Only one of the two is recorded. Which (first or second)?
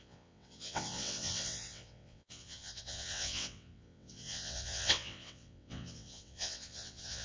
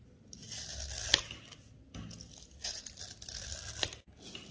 second